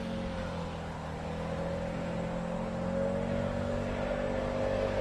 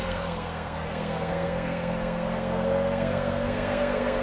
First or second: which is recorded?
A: first